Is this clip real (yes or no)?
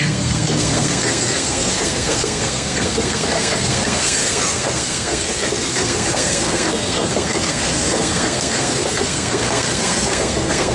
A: no